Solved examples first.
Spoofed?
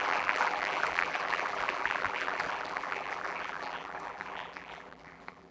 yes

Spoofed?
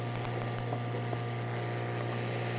no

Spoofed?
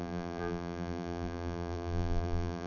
yes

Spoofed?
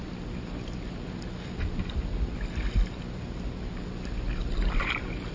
no